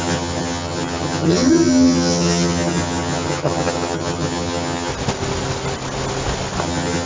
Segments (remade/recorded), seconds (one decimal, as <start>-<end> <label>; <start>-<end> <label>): 0.0-4.9 remade; 4.9-6.6 recorded; 6.6-7.1 remade